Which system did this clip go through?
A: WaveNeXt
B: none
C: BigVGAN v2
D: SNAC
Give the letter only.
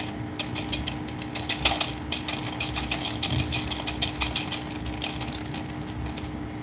B